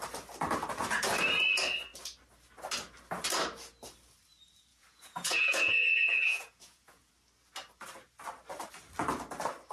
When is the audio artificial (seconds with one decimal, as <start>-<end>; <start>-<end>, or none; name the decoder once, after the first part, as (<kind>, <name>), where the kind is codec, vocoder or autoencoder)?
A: 4.7-7.1 (vocoder, Vocos)